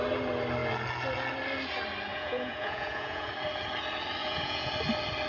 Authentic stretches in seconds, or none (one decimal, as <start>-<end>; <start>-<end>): 0.0-2.1; 3.3-4.2; 4.7-5.3